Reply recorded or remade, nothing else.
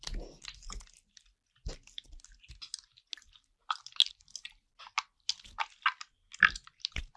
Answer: recorded